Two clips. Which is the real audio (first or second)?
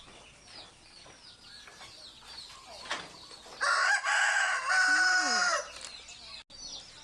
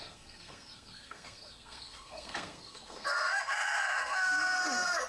first